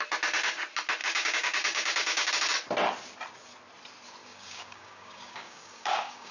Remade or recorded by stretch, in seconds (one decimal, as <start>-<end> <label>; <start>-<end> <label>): 0.0-1.0 recorded; 1.0-2.3 remade; 2.3-4.2 recorded; 4.2-6.3 remade